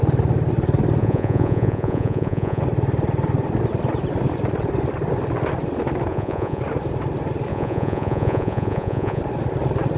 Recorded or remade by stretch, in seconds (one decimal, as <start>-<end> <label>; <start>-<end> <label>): 0.0-1.0 recorded; 1.0-2.6 remade; 2.6-6.1 recorded; 6.1-6.6 remade; 6.6-7.5 recorded; 7.5-9.2 remade; 9.2-10.0 recorded